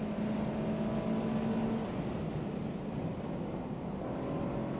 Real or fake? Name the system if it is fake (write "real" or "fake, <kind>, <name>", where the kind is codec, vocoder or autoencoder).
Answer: real